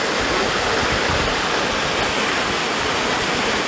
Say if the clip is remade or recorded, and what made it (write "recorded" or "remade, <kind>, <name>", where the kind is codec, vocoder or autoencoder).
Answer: recorded